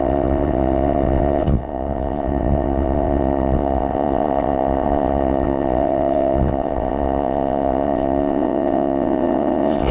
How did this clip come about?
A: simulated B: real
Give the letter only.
A